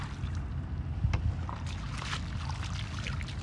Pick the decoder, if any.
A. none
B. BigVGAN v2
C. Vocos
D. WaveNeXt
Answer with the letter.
A